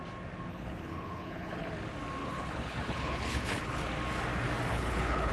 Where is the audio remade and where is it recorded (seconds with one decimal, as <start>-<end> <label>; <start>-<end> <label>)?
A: 0.0-0.5 recorded; 0.5-1.7 remade; 1.7-2.2 recorded; 2.2-3.8 remade; 3.8-4.7 recorded; 4.7-5.3 remade